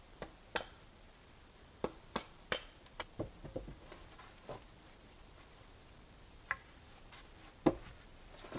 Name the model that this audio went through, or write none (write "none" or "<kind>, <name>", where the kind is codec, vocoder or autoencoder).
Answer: vocoder, BigVGAN v2